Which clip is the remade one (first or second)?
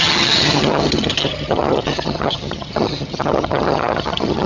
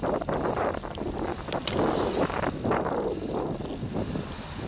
first